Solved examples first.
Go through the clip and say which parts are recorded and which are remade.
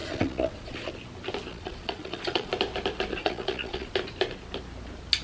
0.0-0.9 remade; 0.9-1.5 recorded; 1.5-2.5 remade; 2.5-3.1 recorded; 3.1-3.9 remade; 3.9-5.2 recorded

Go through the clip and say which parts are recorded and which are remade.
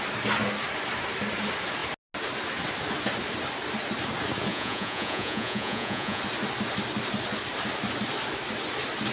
0.0-4.5 recorded; 4.5-6.2 remade; 6.2-9.1 recorded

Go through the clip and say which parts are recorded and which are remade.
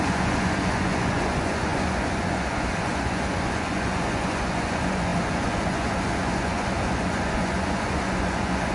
0.0-8.7 remade